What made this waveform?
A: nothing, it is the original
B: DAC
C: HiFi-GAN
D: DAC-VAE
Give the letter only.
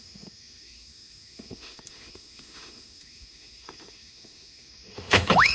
D